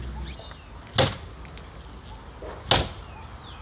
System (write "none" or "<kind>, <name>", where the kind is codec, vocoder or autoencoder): none